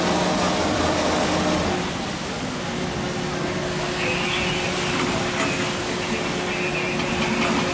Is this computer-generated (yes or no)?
no